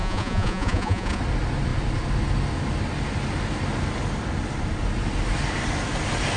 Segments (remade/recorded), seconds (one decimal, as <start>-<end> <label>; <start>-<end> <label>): 0.0-1.2 remade; 1.2-6.4 recorded